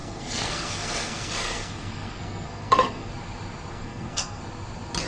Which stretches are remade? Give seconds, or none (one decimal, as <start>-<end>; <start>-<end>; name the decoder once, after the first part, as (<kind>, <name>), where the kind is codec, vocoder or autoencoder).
0.0-3.1 (codec, SNAC); 3.7-4.4